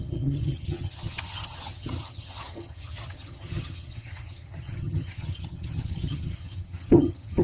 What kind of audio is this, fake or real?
fake